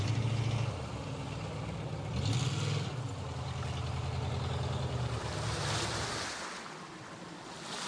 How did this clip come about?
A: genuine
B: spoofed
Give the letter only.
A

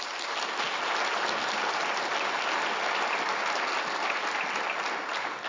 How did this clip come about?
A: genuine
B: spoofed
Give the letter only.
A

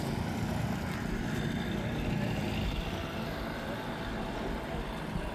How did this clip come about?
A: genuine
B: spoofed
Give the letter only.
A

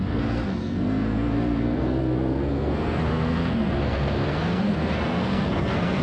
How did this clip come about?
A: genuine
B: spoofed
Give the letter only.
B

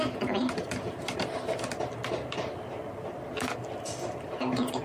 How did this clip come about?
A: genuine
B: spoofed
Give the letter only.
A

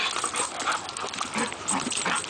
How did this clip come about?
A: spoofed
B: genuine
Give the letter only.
B